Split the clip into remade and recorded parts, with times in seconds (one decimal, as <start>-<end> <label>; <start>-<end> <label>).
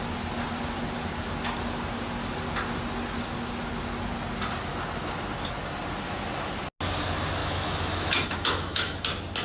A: 0.0-7.4 recorded; 7.4-9.0 remade; 9.0-9.4 recorded